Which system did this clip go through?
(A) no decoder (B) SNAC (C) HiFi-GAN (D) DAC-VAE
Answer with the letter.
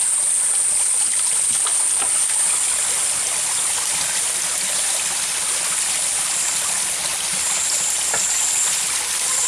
A